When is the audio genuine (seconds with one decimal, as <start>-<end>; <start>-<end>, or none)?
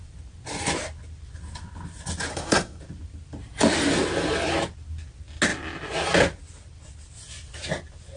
0.0-2.3; 2.8-8.2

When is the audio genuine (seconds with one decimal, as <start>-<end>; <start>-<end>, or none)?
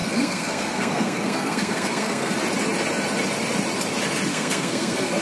2.3-4.3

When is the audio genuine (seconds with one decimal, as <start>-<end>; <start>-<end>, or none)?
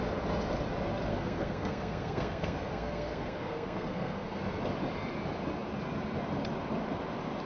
0.0-1.1; 4.4-7.5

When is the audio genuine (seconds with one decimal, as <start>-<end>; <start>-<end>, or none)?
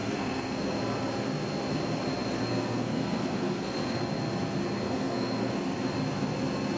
0.8-2.5; 4.0-4.8; 5.5-6.8